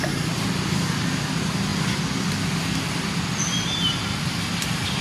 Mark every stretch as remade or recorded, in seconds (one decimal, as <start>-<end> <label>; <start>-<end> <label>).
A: 0.0-5.0 recorded